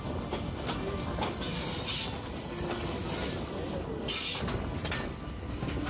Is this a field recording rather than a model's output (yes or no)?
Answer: yes